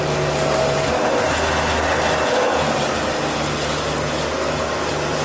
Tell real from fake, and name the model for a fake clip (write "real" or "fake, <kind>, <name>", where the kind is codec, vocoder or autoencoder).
real